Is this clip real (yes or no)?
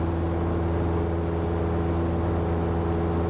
yes